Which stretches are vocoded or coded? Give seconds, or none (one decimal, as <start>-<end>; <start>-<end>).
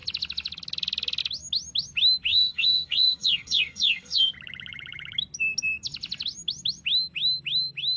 2.3-4.3